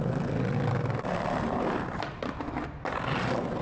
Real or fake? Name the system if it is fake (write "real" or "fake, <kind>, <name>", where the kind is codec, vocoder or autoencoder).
real